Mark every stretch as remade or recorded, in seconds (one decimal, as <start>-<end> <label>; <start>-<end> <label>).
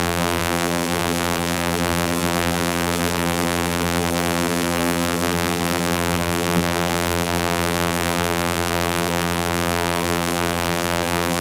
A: 0.0-11.4 remade